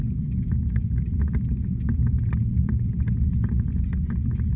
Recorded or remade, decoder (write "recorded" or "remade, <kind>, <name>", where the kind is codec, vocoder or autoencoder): recorded